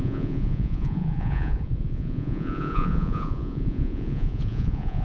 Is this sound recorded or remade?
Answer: remade